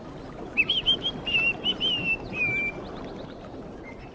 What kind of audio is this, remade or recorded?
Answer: recorded